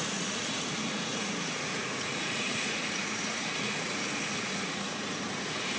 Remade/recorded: remade